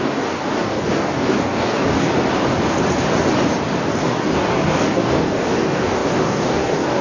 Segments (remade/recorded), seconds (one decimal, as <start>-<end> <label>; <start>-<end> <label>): 0.0-2.1 remade; 2.1-4.0 recorded; 4.0-7.0 remade